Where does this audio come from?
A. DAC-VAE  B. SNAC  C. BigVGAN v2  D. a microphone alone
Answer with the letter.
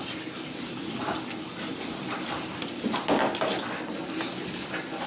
D